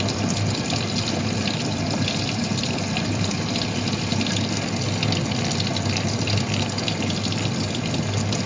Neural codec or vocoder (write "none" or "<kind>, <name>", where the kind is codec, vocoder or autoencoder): none